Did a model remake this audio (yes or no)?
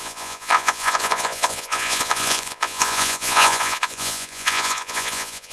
yes